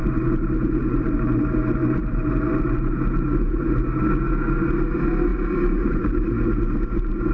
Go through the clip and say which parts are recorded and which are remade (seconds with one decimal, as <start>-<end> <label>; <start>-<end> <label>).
0.0-4.0 remade; 4.0-5.3 recorded; 5.3-6.3 remade; 6.3-7.3 recorded